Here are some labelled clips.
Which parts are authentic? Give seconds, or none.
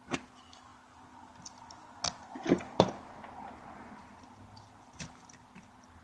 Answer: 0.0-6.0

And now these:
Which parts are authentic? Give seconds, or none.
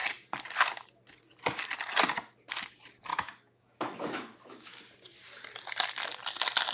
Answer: 0.0-3.1; 4.8-6.7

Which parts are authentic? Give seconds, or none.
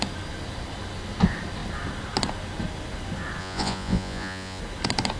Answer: 0.0-3.4; 4.6-5.2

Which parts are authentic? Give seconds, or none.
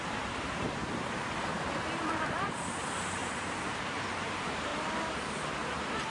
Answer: 0.8-2.4; 4.7-5.3